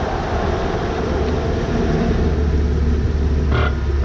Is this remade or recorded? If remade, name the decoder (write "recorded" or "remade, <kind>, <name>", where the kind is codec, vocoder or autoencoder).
recorded